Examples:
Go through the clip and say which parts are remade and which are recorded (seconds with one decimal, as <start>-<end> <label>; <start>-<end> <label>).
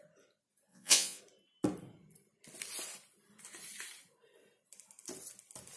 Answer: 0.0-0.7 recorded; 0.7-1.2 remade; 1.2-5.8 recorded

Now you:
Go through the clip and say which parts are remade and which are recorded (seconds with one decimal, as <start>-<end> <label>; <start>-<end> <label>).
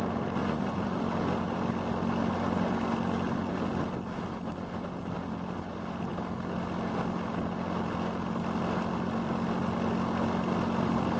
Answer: 0.0-0.4 recorded; 0.4-1.0 remade; 1.0-11.2 recorded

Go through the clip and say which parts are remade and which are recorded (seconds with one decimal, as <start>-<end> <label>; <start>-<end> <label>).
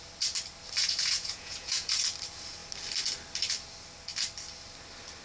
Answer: 0.0-0.8 recorded; 0.8-2.0 remade; 2.0-5.2 recorded